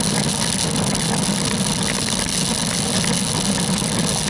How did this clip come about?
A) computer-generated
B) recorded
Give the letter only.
B